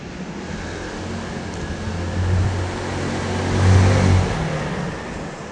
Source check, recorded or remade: recorded